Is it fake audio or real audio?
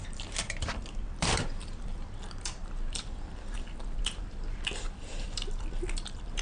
fake